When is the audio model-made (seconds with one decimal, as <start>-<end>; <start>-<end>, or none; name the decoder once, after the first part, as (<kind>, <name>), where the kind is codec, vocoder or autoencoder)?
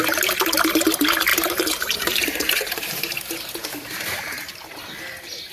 1.3-4.6 (vocoder, BigVGAN v2)